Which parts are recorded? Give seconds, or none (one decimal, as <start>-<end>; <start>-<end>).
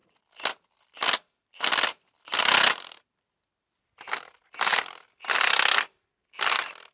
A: 0.0-6.9